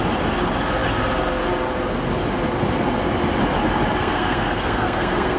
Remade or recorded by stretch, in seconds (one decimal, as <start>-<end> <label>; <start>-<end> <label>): 0.0-4.0 recorded; 4.0-5.4 remade